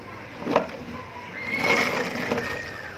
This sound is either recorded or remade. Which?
recorded